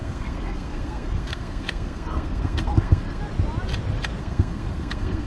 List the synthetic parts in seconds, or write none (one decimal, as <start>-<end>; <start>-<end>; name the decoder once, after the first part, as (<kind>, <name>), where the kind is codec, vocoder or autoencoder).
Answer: 0.0-3.2 (codec, SNAC); 4.2-5.3